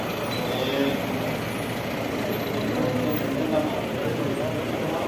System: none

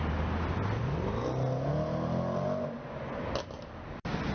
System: none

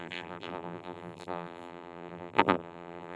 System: vocoder, BigVGAN v2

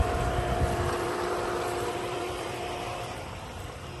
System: vocoder, BigVGAN v2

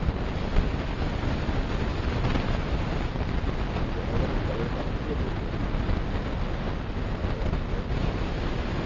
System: none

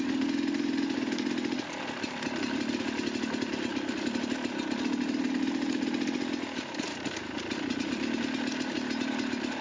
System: none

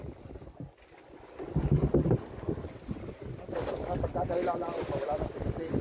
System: none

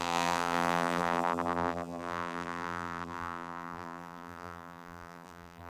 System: vocoder, BigVGAN v2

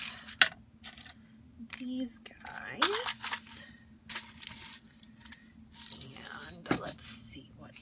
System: none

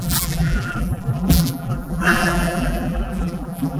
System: vocoder, BigVGAN v2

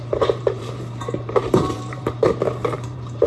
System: vocoder, BigVGAN v2